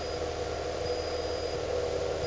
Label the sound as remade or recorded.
recorded